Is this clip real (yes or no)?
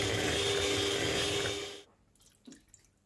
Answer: yes